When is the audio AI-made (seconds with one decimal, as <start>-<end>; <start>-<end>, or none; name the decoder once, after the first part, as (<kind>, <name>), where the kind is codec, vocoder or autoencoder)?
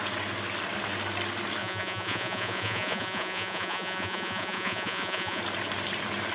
1.6-5.4 (vocoder, Vocos)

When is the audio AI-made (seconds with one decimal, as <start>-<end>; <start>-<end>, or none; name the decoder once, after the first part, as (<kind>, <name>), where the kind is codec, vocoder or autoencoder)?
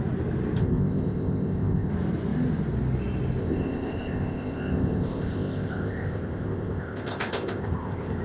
0.6-1.9 (codec, ZipCodec); 3.4-8.2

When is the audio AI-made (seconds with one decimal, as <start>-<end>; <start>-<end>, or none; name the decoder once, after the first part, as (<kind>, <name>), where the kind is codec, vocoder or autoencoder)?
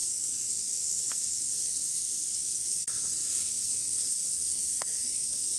0.0-5.6 (codec, SNAC)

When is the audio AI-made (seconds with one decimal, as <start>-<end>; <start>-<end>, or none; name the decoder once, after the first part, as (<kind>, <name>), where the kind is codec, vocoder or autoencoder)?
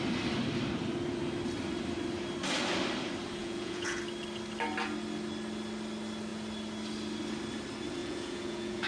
3.4-4.0 (vocoder, Vocos); 8.0-8.9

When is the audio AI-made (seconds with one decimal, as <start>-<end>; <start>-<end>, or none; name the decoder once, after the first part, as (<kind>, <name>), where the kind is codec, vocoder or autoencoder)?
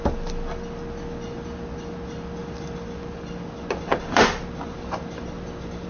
none